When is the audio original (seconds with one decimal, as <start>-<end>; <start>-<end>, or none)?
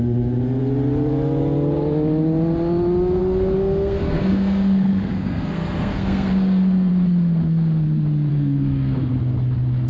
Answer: 0.0-3.2; 6.9-8.3; 9.1-9.9